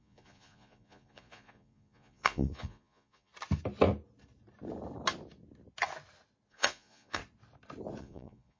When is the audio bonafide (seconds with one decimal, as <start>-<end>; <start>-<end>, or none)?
3.3-6.5; 7.2-8.0

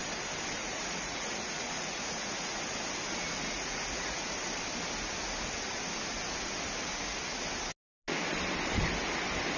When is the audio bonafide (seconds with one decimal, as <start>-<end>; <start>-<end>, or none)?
0.0-0.6; 2.6-3.4; 4.3-9.6

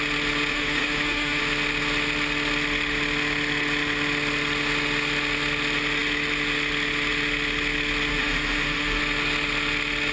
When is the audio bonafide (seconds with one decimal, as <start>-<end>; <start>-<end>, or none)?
0.0-0.5; 1.4-8.1; 9.0-10.1

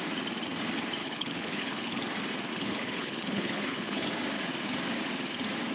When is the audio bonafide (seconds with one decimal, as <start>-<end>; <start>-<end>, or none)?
0.0-1.0; 2.0-2.5; 4.1-5.7

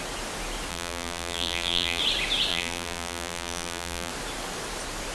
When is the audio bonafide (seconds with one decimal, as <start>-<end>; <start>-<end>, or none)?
0.0-0.7; 2.0-2.5; 4.1-5.1

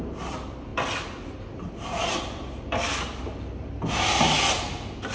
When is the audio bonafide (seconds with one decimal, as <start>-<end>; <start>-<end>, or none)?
0.0-5.1